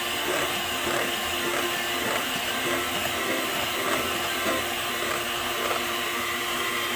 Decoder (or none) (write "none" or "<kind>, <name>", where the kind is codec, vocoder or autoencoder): none